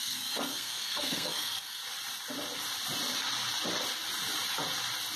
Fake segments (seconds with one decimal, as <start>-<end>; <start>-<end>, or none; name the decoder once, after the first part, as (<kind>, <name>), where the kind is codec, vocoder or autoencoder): 0.0-1.8 (codec, SNAC)